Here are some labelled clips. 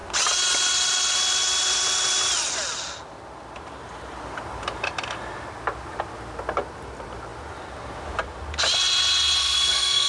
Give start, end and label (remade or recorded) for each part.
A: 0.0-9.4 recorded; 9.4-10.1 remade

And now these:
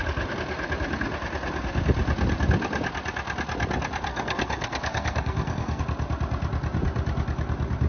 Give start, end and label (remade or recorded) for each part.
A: 0.0-4.1 recorded; 4.1-5.8 remade; 5.8-7.9 recorded

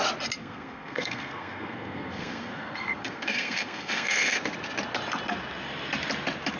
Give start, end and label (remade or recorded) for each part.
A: 0.0-0.4 recorded; 0.4-4.4 remade; 4.4-6.6 recorded

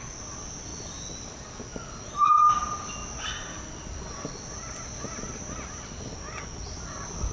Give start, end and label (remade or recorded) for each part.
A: 0.0-7.3 recorded

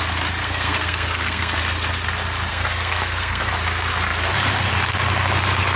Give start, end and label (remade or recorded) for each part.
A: 0.0-0.4 recorded; 0.4-1.6 remade; 1.6-2.5 recorded; 2.5-3.5 remade; 3.5-5.8 recorded